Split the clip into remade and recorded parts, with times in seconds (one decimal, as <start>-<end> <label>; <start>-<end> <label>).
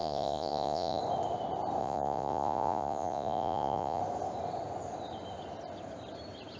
0.0-1.0 remade; 1.0-1.8 recorded; 1.8-4.0 remade; 4.0-6.6 recorded